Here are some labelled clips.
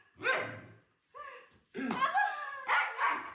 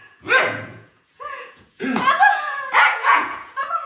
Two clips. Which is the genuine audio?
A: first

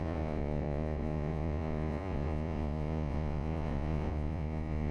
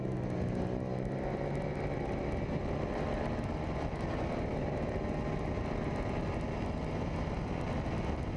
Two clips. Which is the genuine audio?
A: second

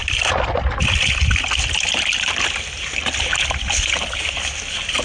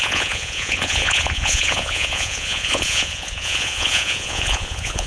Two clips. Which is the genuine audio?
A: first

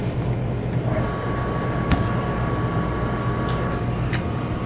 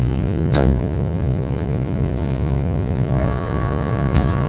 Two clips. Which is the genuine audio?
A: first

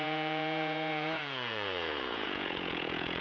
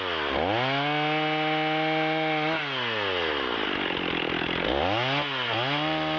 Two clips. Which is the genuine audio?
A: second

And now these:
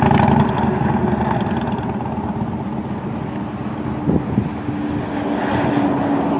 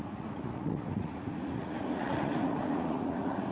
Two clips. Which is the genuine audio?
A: first